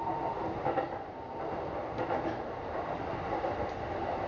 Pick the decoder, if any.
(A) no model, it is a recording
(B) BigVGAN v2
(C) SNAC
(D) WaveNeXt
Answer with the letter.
A